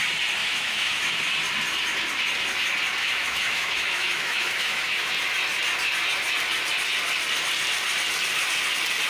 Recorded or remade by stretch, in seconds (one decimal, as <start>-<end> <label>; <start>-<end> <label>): 0.0-0.4 recorded; 0.4-1.2 remade; 1.2-3.0 recorded; 3.0-5.1 remade; 5.1-9.1 recorded